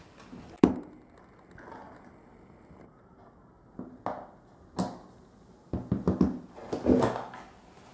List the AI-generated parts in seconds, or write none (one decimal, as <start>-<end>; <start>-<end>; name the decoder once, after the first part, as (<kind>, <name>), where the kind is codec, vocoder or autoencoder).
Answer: none